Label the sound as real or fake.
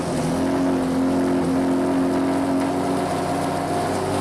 real